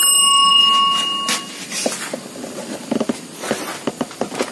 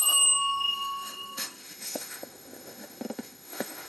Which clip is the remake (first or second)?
second